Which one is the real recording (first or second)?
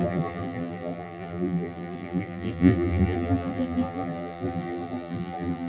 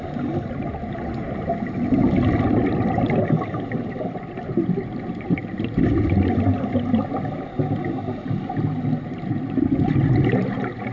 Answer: second